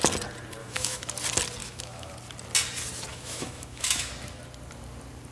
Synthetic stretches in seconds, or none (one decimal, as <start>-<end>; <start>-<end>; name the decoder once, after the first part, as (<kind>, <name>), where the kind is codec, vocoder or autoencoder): 0.6-1.1 (autoencoder, DAC-VAE); 1.6-2.1; 3.1-4.1